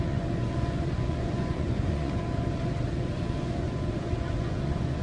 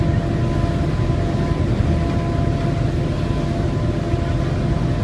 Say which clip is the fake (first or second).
first